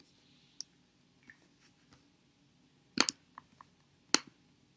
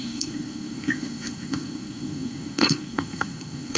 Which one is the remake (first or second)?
second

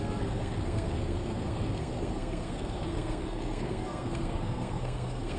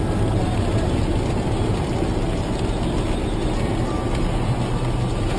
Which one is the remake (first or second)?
first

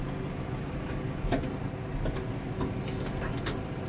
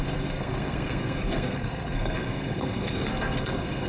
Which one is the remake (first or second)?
second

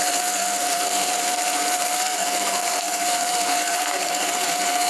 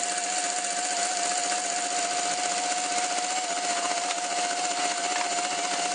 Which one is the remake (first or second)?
first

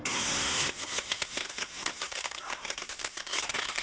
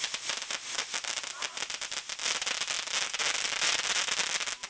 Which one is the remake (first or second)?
first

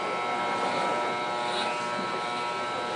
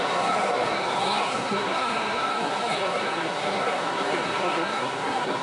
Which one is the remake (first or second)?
second